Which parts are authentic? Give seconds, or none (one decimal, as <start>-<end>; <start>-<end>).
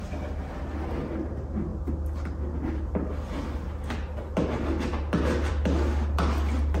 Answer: 0.0-6.8